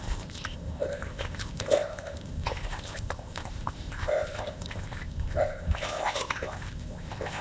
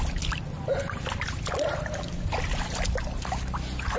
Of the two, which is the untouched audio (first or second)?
second